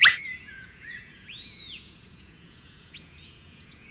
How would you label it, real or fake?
fake